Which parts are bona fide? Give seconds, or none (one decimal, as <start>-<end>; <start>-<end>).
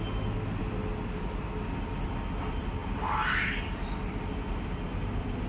0.0-5.5